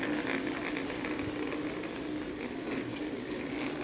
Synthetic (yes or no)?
no